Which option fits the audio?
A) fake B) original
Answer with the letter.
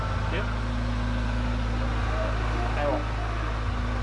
B